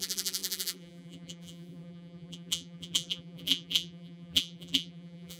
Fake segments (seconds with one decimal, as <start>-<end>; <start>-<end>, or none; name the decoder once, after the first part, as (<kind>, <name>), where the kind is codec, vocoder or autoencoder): 0.0-5.4 (vocoder, BigVGAN v2)

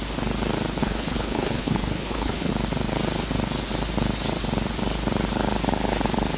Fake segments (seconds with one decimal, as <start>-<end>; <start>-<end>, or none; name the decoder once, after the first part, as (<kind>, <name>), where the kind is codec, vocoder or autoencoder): 0.8-2.5 (codec, HILCodec)

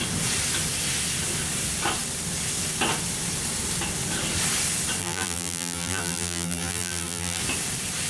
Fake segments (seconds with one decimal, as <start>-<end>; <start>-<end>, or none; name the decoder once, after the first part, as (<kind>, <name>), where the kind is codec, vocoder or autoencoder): 5.0-7.4 (vocoder, BigVGAN v2)

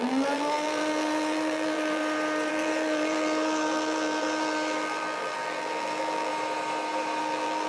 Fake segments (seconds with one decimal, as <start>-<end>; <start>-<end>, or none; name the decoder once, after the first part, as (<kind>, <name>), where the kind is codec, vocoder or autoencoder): 0.0-2.0 (vocoder, BigVGAN v2); 2.5-6.3; 7.2-7.7

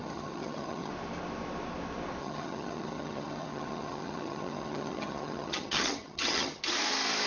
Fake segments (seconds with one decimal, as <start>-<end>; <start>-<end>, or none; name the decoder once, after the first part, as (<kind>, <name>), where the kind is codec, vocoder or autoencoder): 0.0-0.9 (vocoder, HiFi-GAN); 2.2-6.6

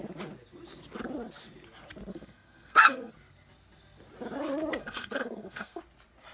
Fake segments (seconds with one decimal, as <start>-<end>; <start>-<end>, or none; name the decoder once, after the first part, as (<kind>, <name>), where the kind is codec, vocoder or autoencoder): 2.1-3.1 (codec, SNAC); 4.8-5.8